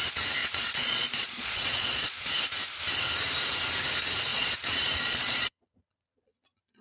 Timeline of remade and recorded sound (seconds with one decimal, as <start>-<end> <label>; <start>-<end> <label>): 0.0-0.4 recorded; 0.4-2.3 remade; 2.3-4.3 recorded; 4.3-6.8 remade